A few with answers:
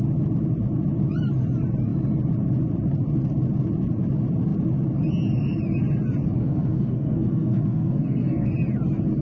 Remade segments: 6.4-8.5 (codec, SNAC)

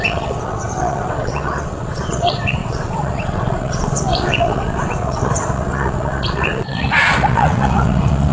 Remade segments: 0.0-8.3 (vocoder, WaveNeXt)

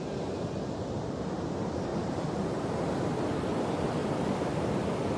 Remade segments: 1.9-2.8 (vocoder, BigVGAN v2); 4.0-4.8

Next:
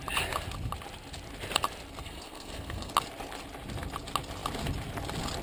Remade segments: 2.0-2.9 (codec, SNAC)

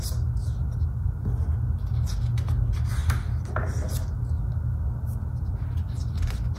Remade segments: none

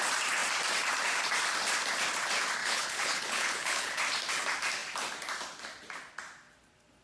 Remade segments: 2.6-4.0 (codec, HILCodec)